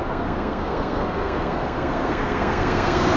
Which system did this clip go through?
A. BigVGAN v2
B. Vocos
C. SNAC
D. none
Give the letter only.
C